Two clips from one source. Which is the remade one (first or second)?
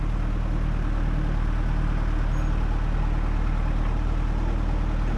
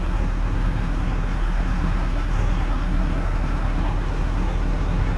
second